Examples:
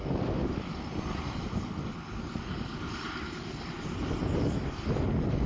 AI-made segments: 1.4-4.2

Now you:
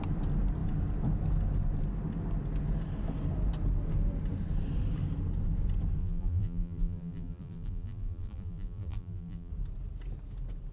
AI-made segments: 6.0-9.5

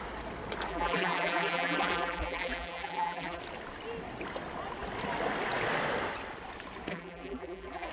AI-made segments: 0.7-3.4; 6.9-7.9

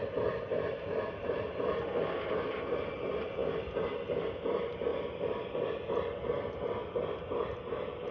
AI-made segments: 0.0-3.4; 4.1-8.1

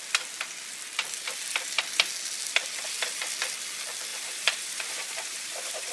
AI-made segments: 4.1-5.9